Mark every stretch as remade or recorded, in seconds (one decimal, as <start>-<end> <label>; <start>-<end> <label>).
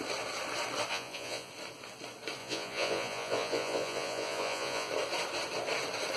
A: 0.0-0.9 recorded; 0.9-1.5 remade; 1.5-2.4 recorded; 2.4-4.9 remade; 4.9-6.2 recorded